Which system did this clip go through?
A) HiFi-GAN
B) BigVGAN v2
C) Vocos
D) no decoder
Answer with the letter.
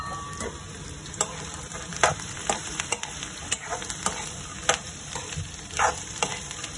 B